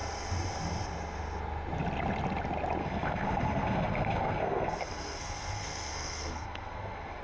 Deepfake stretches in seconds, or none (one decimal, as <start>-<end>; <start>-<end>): 2.8-7.2